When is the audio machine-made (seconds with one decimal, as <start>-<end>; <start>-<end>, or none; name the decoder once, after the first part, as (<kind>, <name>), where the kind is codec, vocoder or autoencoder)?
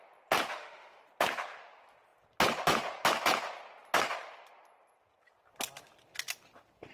0.5-1.0 (autoencoder, DAC-VAE)